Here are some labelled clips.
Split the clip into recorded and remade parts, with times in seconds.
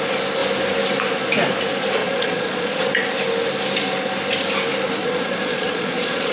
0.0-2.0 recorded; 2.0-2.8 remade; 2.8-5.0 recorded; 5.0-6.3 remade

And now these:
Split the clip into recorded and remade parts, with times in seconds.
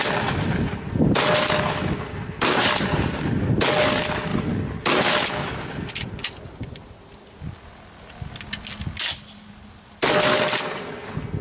0.0-11.4 recorded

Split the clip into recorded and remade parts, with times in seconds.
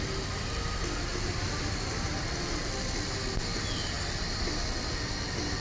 0.0-1.1 recorded; 1.1-2.1 remade; 2.1-5.6 recorded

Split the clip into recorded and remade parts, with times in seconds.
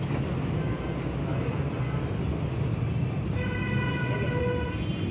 0.0-5.1 recorded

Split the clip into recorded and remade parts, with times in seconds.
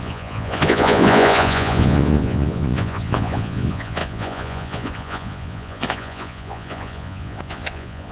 0.0-8.1 remade